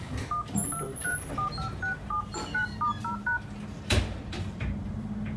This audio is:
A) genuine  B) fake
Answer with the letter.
B